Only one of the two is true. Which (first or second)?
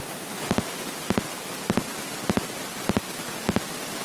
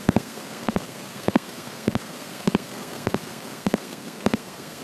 first